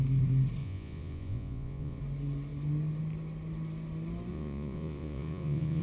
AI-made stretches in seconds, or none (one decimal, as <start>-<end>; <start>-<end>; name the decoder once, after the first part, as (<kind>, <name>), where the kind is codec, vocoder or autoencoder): 0.6-2.0 (vocoder, Vocos); 4.3-5.8